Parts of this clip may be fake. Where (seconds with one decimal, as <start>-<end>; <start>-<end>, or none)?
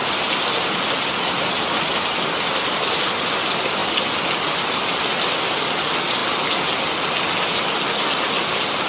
none